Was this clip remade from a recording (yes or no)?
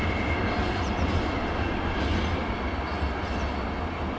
no